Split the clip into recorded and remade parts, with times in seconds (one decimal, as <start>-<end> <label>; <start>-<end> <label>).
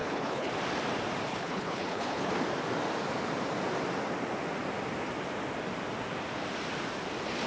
0.0-0.5 remade; 0.5-1.3 recorded; 1.3-2.3 remade; 2.3-7.5 recorded